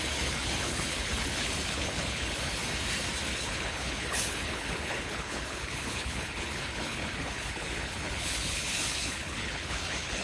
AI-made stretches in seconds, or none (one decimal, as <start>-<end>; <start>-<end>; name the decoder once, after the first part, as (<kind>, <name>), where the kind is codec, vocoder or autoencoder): 0.0-2.6 (codec, HILCodec); 3.3-10.2